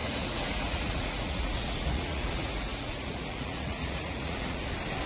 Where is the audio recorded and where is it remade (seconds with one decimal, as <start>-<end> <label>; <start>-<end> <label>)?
0.0-4.6 remade; 4.6-5.1 recorded

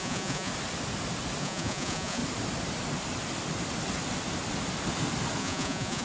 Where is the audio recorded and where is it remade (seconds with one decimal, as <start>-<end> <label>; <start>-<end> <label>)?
0.0-0.5 remade; 0.5-1.4 recorded; 1.4-2.2 remade; 2.2-5.4 recorded; 5.4-6.0 remade

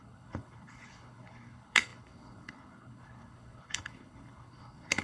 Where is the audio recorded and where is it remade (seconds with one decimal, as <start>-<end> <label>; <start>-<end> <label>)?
0.0-5.0 remade

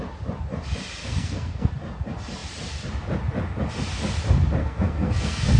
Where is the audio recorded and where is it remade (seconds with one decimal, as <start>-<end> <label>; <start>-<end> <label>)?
0.0-1.0 recorded; 1.0-1.7 remade; 1.7-4.6 recorded; 4.6-5.6 remade